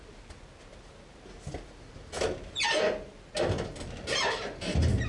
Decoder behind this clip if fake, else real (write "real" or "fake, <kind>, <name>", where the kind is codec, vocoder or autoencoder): real